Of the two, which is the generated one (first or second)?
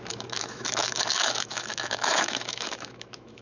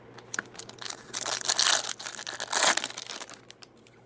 first